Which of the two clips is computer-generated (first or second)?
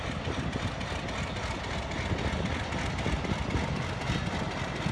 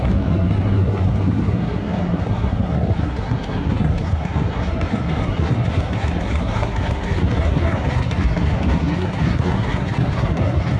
second